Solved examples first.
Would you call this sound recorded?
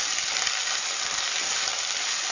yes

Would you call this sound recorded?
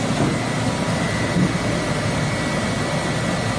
yes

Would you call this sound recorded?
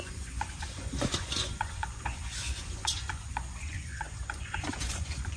no